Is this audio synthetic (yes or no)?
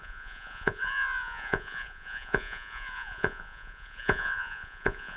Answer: yes